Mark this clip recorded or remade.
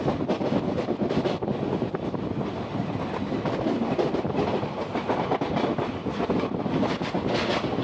recorded